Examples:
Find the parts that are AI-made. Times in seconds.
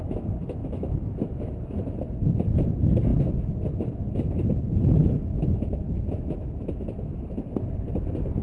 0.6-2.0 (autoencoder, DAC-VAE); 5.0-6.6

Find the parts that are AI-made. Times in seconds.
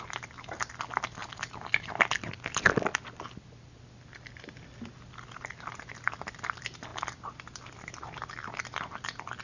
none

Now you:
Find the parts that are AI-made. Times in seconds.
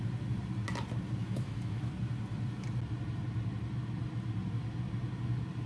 1.2-1.9 (autoencoder, DAC-VAE)